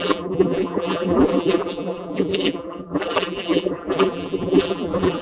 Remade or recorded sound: remade